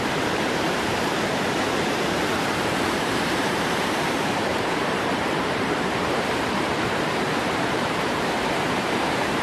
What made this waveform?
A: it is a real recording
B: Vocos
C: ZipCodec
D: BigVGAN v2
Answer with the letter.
D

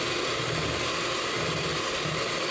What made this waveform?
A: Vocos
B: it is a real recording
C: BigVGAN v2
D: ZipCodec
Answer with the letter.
B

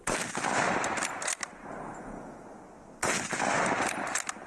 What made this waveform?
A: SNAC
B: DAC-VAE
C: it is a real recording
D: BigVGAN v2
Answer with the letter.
C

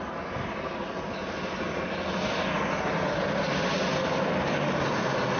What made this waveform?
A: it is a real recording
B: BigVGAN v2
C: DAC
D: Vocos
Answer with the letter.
A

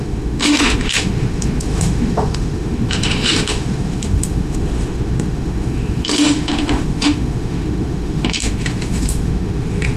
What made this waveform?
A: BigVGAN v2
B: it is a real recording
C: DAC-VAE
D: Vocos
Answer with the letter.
C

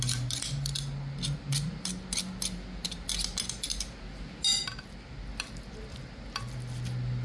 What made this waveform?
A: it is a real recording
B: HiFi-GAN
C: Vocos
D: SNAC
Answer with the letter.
A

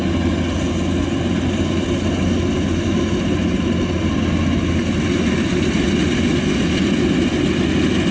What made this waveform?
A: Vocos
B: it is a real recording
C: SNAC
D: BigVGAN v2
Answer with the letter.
B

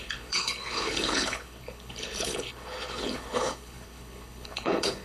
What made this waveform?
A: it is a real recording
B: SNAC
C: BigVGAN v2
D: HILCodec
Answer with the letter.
D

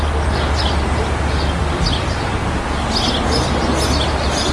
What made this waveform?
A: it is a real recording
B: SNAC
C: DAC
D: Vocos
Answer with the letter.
A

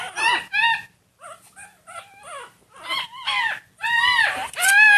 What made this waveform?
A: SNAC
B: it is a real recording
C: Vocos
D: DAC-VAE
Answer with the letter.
B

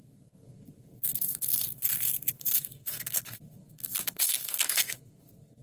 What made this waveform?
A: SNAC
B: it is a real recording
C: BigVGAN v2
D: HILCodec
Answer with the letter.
A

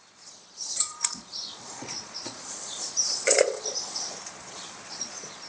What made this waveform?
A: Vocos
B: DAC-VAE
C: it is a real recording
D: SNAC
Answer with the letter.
A